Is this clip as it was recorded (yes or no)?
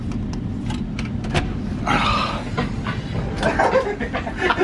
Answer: yes